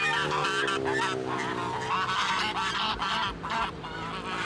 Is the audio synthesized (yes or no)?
no